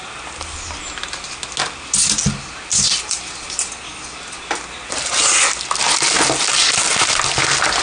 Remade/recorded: recorded